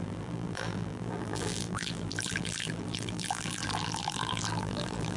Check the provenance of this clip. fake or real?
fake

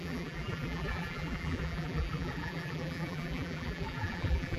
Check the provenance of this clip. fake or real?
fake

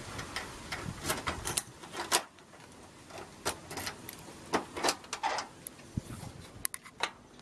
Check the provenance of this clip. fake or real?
real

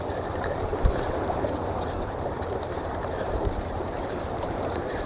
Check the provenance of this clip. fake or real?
fake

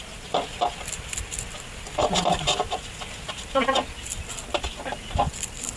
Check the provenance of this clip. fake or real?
real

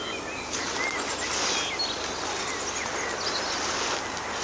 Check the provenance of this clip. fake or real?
real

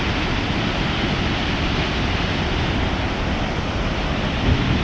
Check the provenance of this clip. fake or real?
fake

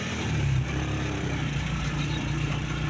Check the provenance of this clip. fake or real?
fake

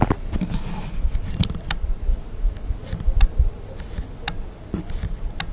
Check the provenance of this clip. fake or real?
real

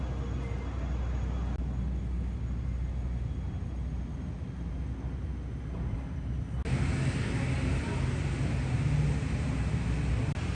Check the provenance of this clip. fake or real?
real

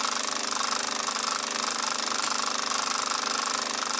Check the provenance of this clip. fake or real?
real